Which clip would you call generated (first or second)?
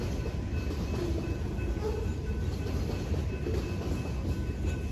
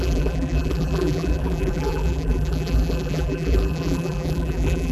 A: second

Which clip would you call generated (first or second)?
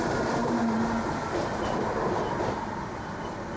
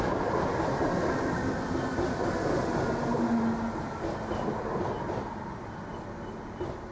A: first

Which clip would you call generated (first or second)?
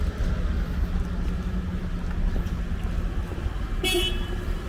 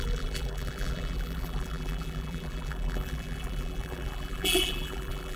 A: second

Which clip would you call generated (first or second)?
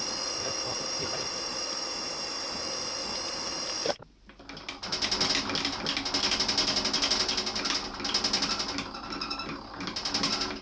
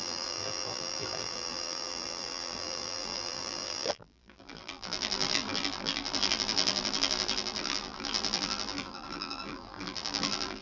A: second